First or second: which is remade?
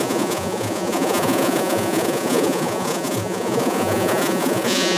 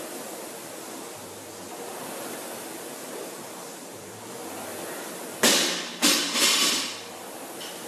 first